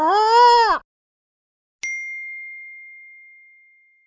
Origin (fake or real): real